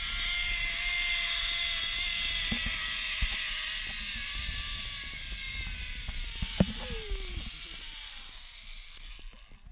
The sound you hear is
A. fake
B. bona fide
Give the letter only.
B